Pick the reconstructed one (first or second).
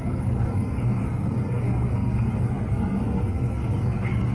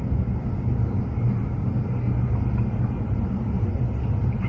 first